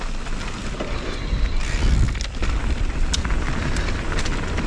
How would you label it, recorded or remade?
recorded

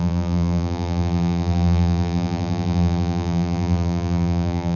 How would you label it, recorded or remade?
remade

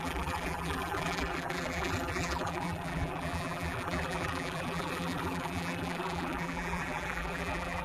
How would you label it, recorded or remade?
remade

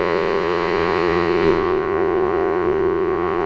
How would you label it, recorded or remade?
remade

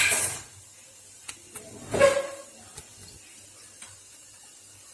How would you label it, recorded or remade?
recorded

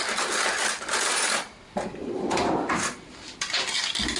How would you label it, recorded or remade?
recorded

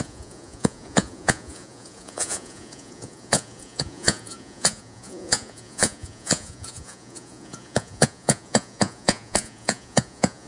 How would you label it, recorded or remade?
remade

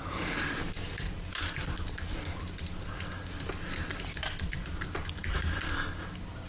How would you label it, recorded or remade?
recorded